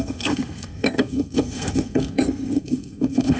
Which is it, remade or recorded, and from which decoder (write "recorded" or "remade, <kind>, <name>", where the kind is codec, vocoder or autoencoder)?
remade, codec, SNAC